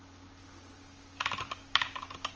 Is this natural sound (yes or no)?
yes